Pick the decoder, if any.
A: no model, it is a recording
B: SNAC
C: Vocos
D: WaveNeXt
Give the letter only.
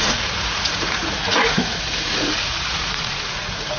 C